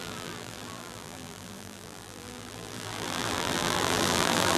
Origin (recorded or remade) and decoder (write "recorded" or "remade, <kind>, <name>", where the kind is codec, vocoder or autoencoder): remade, vocoder, BigVGAN v2